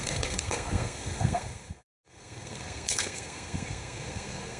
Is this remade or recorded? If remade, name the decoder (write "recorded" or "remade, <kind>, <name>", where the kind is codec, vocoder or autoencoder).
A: remade, codec, SNAC